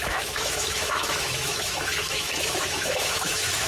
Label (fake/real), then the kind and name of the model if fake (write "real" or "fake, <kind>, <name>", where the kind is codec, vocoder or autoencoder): fake, autoencoder, DAC-VAE